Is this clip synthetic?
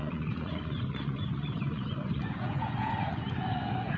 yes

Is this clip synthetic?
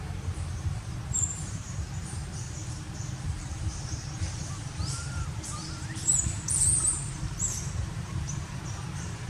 yes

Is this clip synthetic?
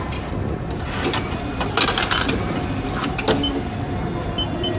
no